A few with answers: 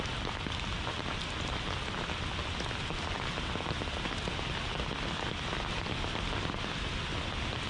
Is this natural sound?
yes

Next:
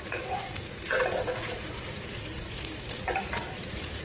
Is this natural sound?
no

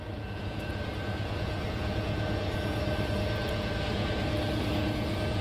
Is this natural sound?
no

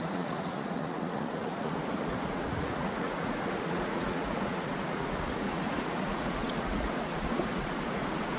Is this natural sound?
no